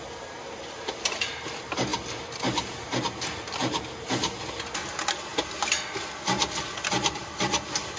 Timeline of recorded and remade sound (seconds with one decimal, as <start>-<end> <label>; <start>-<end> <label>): 0.0-8.0 recorded